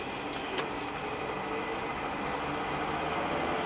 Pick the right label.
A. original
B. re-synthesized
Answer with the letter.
A